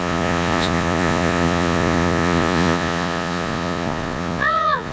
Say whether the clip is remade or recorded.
remade